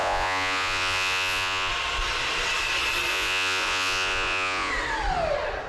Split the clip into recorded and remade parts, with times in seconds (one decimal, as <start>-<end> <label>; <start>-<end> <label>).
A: 0.0-1.7 remade; 1.7-3.1 recorded; 3.1-4.7 remade; 4.7-5.7 recorded